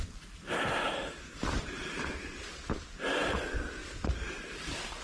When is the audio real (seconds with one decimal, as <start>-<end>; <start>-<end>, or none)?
0.0-5.0